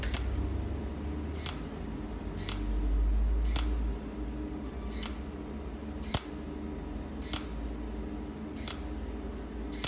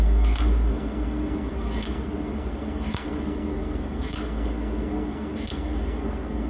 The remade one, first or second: second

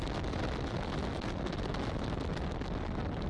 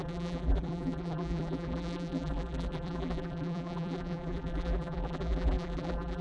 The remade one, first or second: second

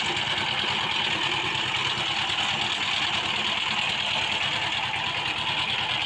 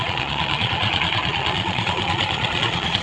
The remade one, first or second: second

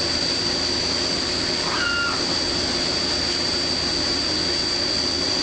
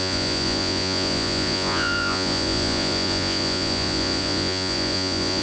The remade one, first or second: second